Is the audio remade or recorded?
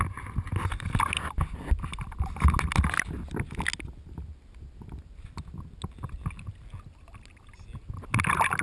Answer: recorded